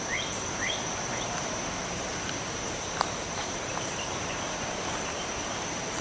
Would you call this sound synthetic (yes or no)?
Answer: yes